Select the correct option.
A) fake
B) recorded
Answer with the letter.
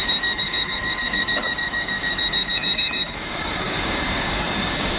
A